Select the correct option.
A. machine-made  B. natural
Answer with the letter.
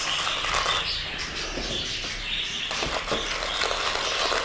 B